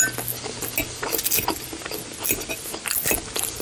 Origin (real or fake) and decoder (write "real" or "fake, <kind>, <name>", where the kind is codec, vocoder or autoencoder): real